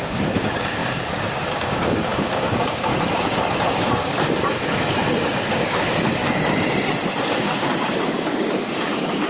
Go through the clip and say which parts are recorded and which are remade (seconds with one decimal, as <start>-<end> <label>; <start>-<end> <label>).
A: 0.0-2.9 remade; 2.9-3.7 recorded; 3.7-6.2 remade; 6.2-7.3 recorded; 7.3-9.3 remade